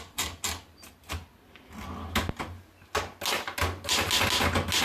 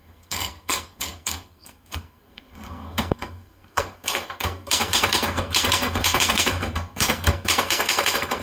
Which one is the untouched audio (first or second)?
first